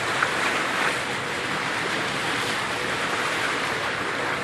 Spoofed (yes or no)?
no